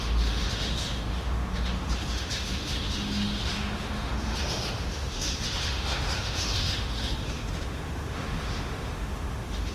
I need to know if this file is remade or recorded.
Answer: remade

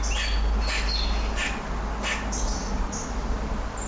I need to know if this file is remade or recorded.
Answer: recorded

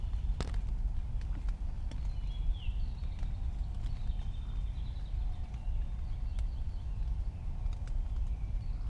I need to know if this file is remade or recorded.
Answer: recorded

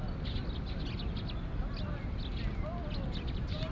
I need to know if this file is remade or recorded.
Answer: recorded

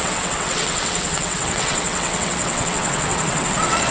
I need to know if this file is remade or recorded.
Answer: remade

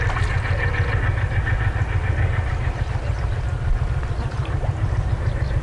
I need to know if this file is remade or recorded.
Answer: recorded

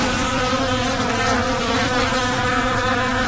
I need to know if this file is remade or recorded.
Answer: remade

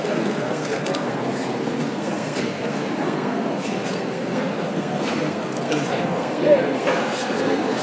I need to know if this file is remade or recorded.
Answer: remade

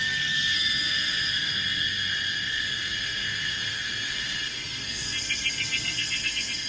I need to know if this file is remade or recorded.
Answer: remade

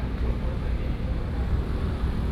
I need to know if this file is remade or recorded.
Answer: recorded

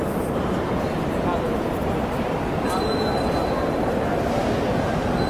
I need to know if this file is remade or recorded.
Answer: recorded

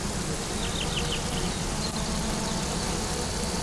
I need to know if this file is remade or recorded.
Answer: remade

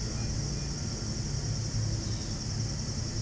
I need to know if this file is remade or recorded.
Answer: recorded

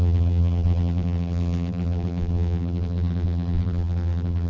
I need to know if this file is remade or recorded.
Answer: remade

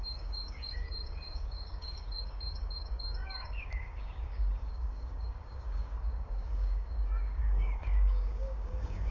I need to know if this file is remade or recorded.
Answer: remade